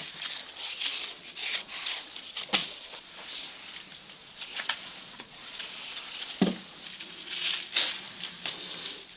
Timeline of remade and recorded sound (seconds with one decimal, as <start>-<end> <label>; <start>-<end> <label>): 0.0-1.4 recorded; 1.4-2.1 remade; 2.1-2.6 recorded; 2.6-3.4 remade; 3.4-4.2 recorded; 4.2-6.4 remade; 6.4-9.2 recorded